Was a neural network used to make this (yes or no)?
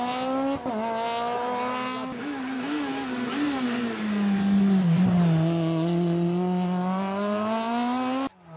no